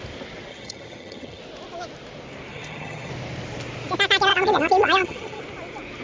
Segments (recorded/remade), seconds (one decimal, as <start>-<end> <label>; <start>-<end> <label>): 0.0-0.5 recorded; 0.5-1.4 remade; 1.4-2.5 recorded; 2.5-3.1 remade; 3.1-4.3 recorded; 4.3-5.4 remade; 5.4-6.0 recorded